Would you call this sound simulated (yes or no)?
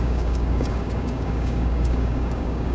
yes